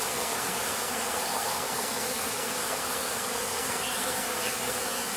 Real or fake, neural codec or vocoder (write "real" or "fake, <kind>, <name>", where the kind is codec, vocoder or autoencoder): fake, codec, SNAC